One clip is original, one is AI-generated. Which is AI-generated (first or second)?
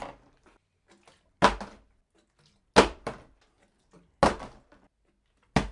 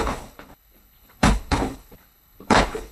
second